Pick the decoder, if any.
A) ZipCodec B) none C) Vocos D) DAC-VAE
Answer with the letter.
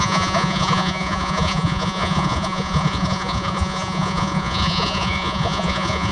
C